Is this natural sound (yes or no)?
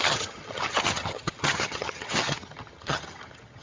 no